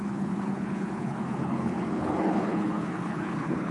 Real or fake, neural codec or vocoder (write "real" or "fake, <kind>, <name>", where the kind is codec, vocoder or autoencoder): fake, codec, HILCodec